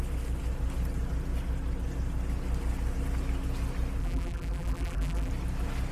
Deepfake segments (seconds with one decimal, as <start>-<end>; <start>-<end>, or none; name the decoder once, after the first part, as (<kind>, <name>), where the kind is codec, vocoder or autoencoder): 4.0-5.3 (vocoder, BigVGAN v2)